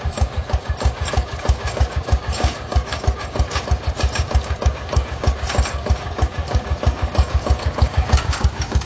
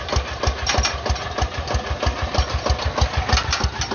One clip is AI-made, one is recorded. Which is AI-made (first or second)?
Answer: first